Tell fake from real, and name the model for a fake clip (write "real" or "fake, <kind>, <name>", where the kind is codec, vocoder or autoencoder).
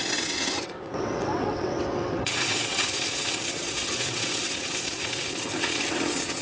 fake, vocoder, WaveNeXt